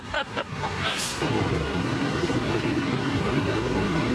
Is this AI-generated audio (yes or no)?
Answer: yes